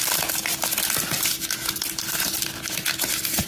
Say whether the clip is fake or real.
real